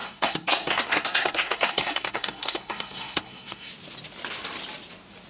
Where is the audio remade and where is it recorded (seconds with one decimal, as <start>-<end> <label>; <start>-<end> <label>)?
0.0-3.7 remade; 3.7-5.3 recorded